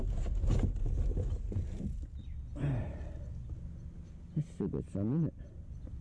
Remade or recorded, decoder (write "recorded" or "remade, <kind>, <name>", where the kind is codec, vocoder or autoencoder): recorded